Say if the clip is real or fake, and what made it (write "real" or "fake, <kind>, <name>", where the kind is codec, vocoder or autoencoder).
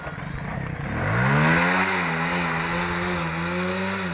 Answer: real